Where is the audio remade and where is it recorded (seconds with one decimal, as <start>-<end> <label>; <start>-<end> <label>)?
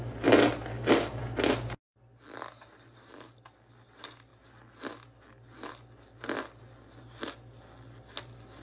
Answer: 0.0-0.7 recorded; 0.7-1.2 remade; 1.2-8.6 recorded